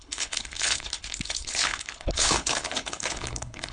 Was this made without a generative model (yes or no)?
no